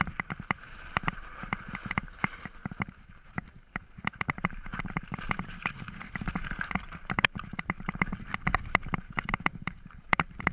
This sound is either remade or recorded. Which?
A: remade